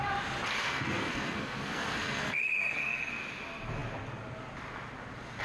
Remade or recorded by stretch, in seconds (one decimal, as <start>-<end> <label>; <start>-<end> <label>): 0.0-0.6 recorded; 0.6-3.1 remade; 3.1-5.4 recorded